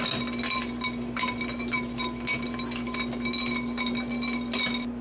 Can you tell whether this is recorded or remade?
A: recorded